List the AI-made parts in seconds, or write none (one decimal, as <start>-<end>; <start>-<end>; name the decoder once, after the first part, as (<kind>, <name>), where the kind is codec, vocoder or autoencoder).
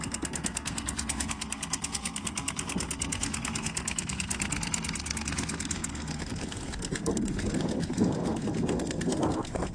0.0-9.7 (codec, SNAC)